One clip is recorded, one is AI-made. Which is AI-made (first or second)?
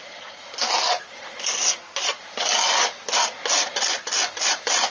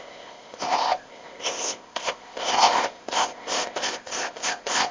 second